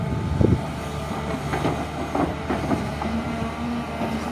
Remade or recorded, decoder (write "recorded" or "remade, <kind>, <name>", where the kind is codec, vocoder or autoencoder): recorded